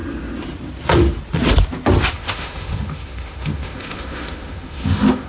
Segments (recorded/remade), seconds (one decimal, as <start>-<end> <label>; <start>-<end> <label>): 0.0-2.1 recorded; 2.1-5.3 remade